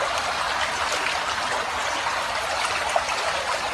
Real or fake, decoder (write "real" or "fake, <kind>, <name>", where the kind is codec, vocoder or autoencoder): real